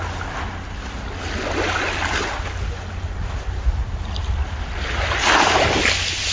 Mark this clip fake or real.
real